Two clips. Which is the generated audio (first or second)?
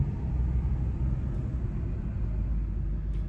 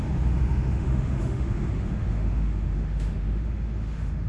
second